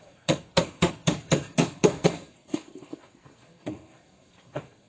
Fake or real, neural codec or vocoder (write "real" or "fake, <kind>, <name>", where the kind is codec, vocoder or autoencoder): fake, codec, SNAC